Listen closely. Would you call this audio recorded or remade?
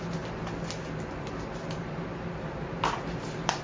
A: recorded